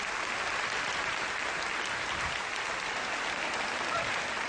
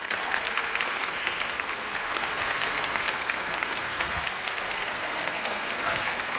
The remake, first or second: second